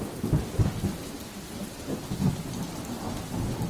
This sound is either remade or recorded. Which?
remade